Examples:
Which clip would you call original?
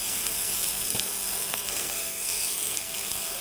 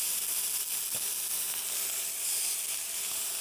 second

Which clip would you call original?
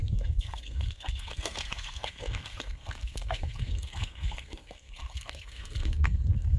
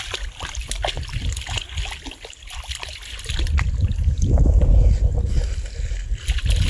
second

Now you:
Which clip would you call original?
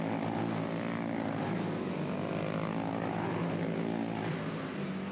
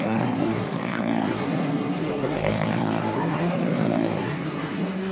first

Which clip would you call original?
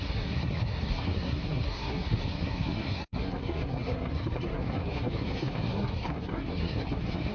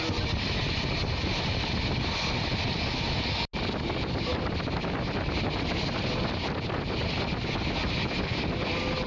second